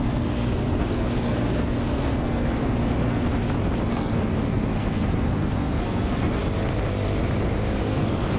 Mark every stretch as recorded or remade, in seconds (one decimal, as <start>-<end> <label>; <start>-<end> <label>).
0.0-3.3 remade; 3.3-3.9 recorded; 3.9-6.4 remade; 6.4-7.8 recorded; 7.8-8.4 remade